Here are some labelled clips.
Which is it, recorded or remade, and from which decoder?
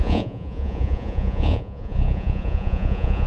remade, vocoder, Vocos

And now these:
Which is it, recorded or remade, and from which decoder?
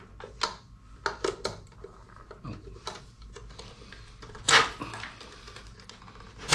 recorded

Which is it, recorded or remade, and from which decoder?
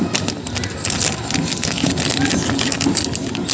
recorded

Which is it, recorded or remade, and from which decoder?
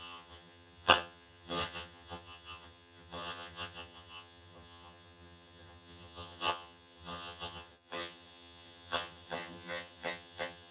remade, vocoder, HiFi-GAN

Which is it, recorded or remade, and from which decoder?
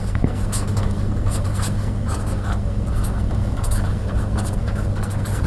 remade, codec, SNAC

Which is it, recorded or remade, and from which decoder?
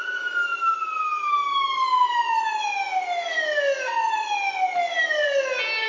recorded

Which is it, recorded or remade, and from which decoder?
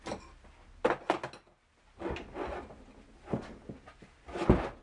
recorded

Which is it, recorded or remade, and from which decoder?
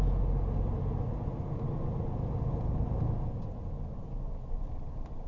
recorded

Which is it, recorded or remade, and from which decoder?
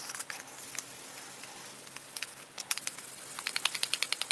recorded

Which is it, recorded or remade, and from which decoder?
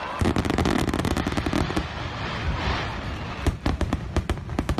recorded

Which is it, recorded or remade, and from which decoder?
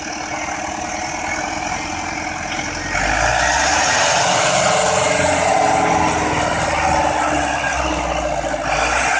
recorded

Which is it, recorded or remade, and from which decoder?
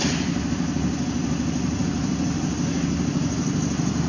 recorded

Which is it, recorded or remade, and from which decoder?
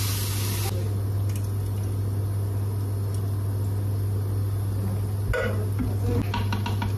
recorded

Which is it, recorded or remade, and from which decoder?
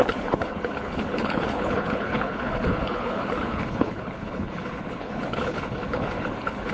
remade, codec, HILCodec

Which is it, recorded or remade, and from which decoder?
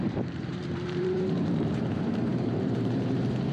remade, vocoder, BigVGAN v2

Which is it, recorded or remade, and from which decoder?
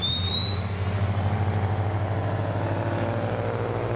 recorded